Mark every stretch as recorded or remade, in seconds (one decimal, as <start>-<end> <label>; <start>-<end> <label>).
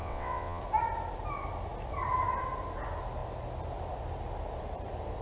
0.0-0.6 remade; 0.6-5.2 recorded